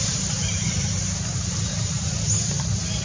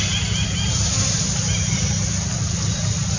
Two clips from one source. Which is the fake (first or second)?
first